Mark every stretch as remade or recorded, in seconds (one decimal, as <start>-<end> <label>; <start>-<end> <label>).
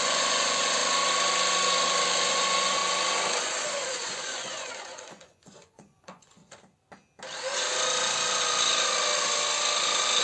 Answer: 0.0-0.8 remade; 0.8-2.3 recorded; 2.3-2.8 remade; 2.8-3.4 recorded; 3.4-6.4 remade; 6.4-10.2 recorded